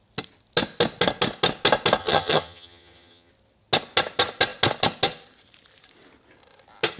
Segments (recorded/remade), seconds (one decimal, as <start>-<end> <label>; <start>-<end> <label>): 0.0-2.0 recorded; 2.0-3.3 remade; 3.3-7.0 recorded